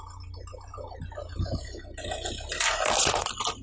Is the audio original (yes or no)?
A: yes